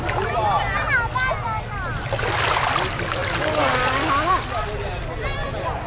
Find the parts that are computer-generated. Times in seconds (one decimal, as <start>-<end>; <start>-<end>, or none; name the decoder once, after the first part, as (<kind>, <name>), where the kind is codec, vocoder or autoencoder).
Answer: none